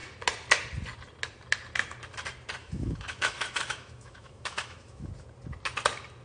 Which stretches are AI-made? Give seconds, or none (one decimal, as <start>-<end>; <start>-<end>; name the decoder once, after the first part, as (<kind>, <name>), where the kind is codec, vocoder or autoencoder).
2.6-5.1 (autoencoder, DAC-VAE)